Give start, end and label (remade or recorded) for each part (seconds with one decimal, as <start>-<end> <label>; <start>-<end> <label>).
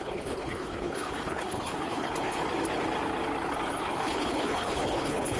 0.0-2.4 remade; 2.4-3.8 recorded; 3.8-5.4 remade